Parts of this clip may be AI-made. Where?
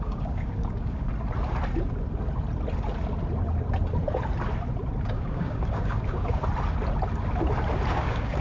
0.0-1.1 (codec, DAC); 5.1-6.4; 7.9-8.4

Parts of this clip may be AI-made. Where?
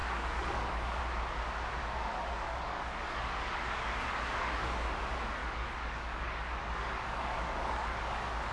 0.0-1.0 (codec, DAC); 1.8-4.9; 5.4-8.5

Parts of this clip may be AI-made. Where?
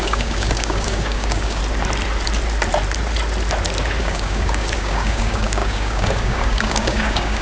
0.0-1.6 (codec, DAC); 4.0-7.4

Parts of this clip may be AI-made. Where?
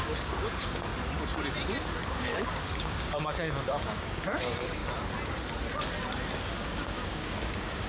0.0-0.9 (codec, DAC); 2.0-4.8; 6.5-7.9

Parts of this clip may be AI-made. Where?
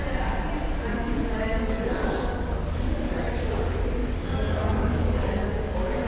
0.9-3.4 (codec, DAC); 4.0-6.1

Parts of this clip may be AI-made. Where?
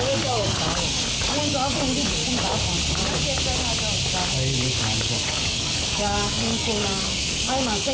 0.0-2.2 (codec, DAC); 5.0-7.9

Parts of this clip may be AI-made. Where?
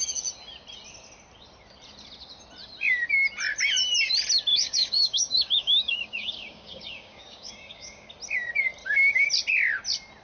4.5-8.1 (codec, DAC); 8.8-9.3